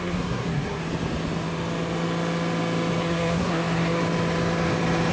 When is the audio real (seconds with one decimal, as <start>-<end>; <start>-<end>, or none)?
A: 0.8-3.0; 4.0-5.1